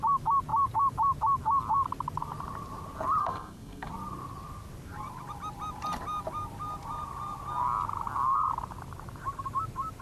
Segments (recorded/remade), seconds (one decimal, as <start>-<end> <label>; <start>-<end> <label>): 0.0-3.2 recorded; 3.2-3.9 remade; 3.9-10.0 recorded